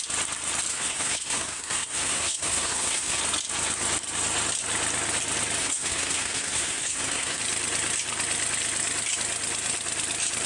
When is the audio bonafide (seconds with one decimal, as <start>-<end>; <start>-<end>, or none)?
0.0-0.7; 3.2-5.6; 7.4-10.5